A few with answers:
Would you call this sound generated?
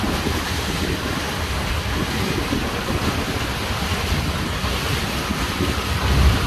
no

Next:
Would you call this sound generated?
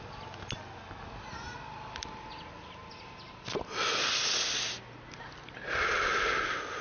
no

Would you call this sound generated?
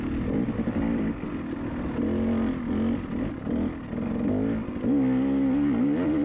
no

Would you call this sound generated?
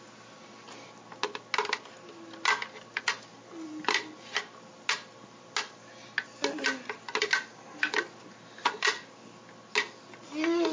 no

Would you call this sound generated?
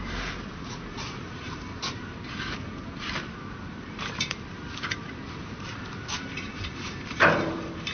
yes